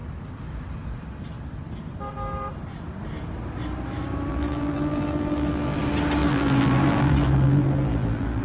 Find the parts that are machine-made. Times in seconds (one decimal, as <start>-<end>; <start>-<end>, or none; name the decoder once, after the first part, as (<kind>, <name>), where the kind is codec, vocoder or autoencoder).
4.3-5.8 (vocoder, BigVGAN v2); 6.2-8.4